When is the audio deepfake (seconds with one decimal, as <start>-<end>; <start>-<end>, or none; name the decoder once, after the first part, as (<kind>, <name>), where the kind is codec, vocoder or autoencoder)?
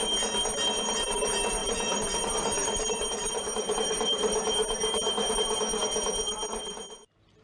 1.6-5.3 (vocoder, BigVGAN v2)